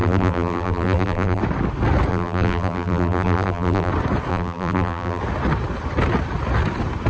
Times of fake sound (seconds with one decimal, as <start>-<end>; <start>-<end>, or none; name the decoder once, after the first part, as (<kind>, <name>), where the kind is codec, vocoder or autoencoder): 0.0-1.4 (vocoder, BigVGAN v2); 2.1-3.9; 4.3-5.2